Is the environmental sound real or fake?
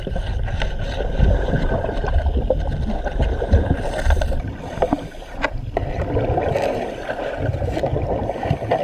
real